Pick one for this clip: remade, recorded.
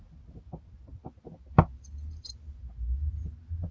recorded